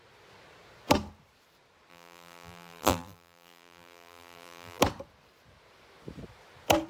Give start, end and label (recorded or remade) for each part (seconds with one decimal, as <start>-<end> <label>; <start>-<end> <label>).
0.0-1.9 recorded; 1.9-4.8 remade; 4.8-6.9 recorded